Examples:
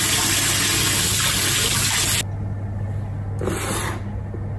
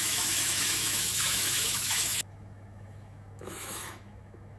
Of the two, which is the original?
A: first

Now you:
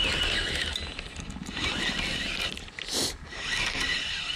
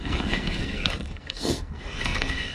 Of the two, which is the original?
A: first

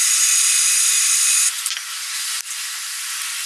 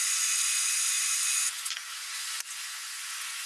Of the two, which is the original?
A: first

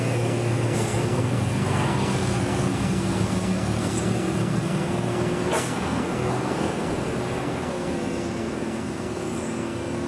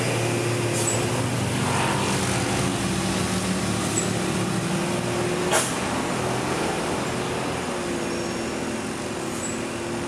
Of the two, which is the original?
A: second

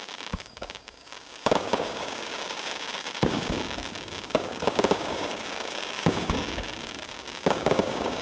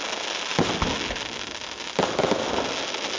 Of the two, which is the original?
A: second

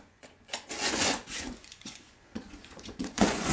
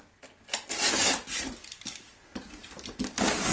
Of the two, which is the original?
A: second